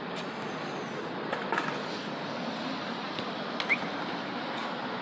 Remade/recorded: recorded